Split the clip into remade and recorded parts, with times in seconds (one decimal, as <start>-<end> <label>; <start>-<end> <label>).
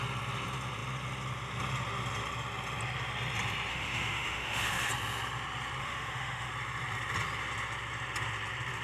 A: 0.0-3.7 recorded; 3.7-4.9 remade; 4.9-5.8 recorded; 5.8-6.5 remade; 6.5-8.8 recorded